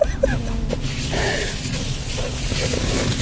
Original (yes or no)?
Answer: yes